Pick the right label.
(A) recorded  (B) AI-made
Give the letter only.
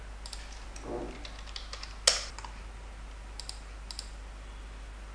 A